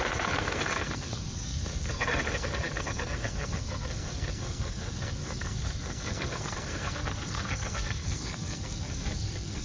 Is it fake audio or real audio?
fake